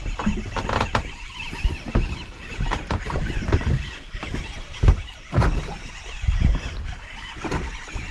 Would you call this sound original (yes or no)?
yes